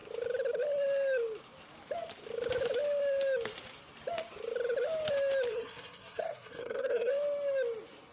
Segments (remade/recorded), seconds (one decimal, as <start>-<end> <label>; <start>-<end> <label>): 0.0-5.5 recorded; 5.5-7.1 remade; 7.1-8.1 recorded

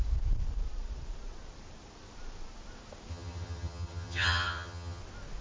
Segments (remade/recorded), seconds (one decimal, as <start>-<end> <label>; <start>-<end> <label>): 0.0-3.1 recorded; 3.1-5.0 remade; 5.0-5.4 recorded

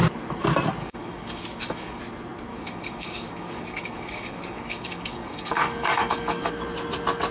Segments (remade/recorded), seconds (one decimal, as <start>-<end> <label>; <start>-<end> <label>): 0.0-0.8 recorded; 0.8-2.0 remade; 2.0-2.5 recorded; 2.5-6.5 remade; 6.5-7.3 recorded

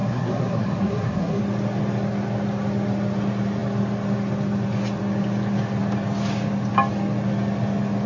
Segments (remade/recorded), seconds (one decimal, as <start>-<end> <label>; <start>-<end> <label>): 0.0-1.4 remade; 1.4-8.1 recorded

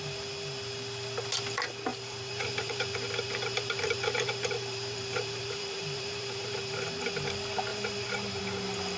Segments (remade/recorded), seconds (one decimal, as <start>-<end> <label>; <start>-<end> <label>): 0.0-1.9 recorded; 1.9-7.0 remade; 7.0-7.7 recorded; 7.7-8.4 remade; 8.4-9.0 recorded